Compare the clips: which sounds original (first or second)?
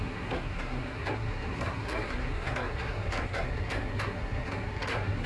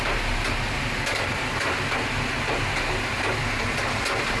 second